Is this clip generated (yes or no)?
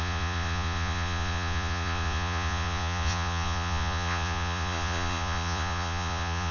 yes